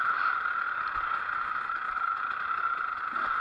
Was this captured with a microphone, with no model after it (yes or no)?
yes